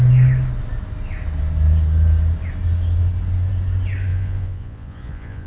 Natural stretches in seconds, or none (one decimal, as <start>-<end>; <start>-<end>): 0.0-4.1